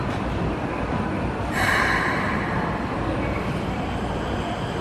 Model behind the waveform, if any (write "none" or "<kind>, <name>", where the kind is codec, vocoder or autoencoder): vocoder, BigVGAN v2